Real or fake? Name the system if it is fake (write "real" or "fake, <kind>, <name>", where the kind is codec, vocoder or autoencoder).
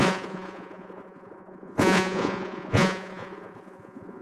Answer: fake, vocoder, Vocos